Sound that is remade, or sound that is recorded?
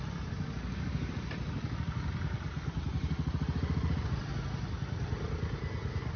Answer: recorded